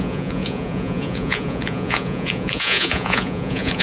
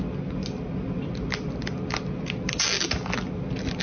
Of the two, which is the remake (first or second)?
first